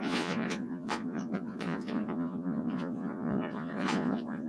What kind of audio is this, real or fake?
fake